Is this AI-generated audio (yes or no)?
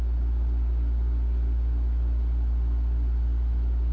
no